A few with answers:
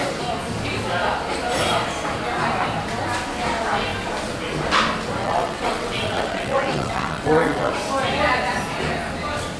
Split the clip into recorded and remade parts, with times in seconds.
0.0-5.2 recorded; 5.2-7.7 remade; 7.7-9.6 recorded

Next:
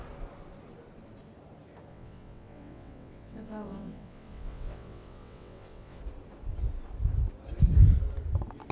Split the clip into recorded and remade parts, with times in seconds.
0.0-1.9 recorded; 1.9-6.0 remade; 6.0-8.7 recorded

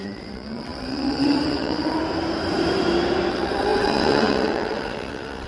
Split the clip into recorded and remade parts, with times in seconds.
0.0-2.0 remade; 2.0-3.3 recorded; 3.3-5.5 remade

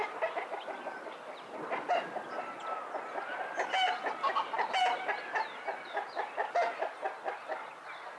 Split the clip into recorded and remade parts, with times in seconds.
0.0-8.2 recorded